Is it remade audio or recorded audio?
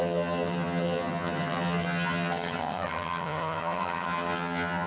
remade